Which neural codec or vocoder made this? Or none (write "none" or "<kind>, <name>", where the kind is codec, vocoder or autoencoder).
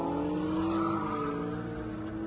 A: none